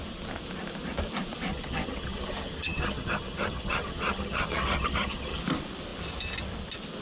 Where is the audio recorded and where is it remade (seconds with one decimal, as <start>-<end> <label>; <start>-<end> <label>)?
0.0-1.5 recorded; 1.5-5.4 remade; 5.4-7.0 recorded